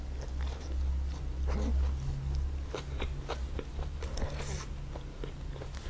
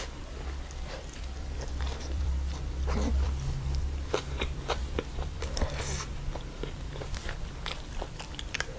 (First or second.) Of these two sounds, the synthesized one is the second